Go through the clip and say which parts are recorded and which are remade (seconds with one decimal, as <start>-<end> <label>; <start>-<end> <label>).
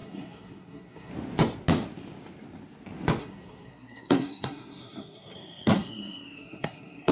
0.0-1.1 remade; 1.1-3.2 recorded; 3.2-7.1 remade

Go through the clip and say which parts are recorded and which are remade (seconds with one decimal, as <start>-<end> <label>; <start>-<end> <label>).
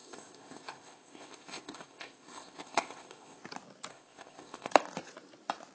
0.0-3.4 remade; 3.4-3.9 recorded; 3.9-4.7 remade; 4.7-5.7 recorded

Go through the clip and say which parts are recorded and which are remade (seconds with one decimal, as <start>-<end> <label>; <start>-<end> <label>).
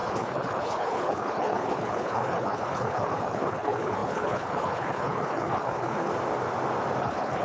0.0-6.1 remade; 6.1-7.0 recorded; 7.0-7.4 remade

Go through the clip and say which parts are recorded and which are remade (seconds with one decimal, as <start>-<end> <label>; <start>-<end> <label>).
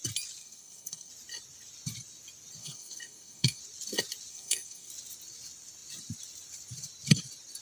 0.0-0.4 recorded; 0.4-1.1 remade; 1.1-2.6 recorded; 2.6-3.6 remade; 3.6-4.3 recorded; 4.3-4.9 remade; 4.9-7.6 recorded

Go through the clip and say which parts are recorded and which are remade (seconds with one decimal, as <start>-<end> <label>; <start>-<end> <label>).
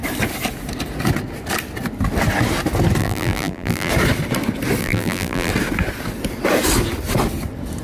0.0-3.0 recorded; 3.0-3.9 remade; 3.9-4.8 recorded; 4.8-5.5 remade; 5.5-7.8 recorded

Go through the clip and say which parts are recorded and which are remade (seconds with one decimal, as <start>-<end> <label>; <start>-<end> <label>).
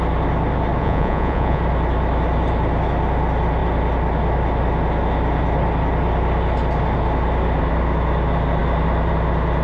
0.0-0.8 recorded; 0.8-1.6 remade; 1.6-9.6 recorded